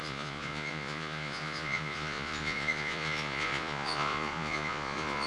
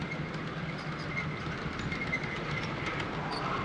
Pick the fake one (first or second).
first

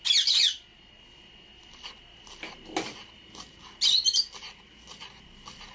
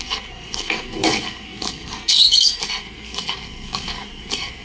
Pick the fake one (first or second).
second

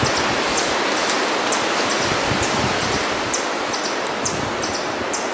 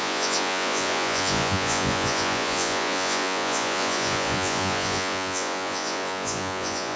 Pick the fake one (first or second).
second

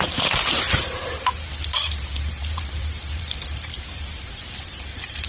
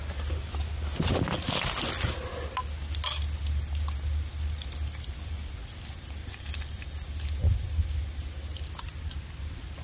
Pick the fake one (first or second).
first